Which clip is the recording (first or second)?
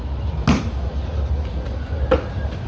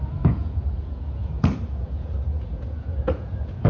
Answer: first